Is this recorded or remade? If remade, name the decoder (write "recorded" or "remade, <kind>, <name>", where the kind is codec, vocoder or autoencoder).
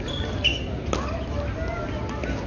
recorded